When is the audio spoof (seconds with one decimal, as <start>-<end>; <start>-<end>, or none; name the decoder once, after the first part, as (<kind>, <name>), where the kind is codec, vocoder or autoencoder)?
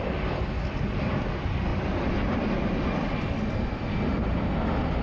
none